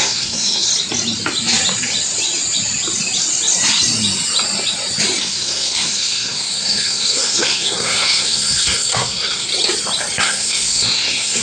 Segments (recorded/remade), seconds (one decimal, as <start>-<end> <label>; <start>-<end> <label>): 0.0-0.7 remade; 0.7-5.2 recorded; 5.2-9.5 remade; 9.5-10.2 recorded; 10.2-11.4 remade